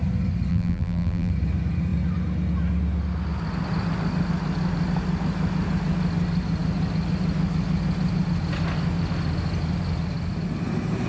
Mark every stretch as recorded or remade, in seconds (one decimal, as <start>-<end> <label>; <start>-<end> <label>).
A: 0.0-0.5 recorded; 0.5-1.3 remade; 1.3-11.1 recorded